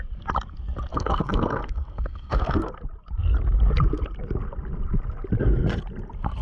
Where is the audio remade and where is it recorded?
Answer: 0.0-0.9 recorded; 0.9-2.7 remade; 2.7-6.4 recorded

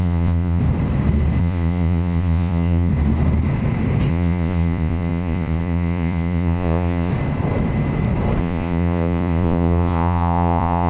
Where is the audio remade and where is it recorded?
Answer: 0.0-0.6 remade; 0.6-1.4 recorded; 1.4-2.9 remade; 2.9-4.1 recorded; 4.1-7.1 remade; 7.1-8.4 recorded; 8.4-10.9 remade

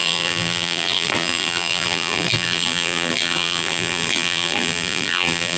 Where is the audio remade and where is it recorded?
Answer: 0.0-5.6 remade